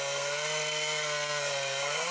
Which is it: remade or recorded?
remade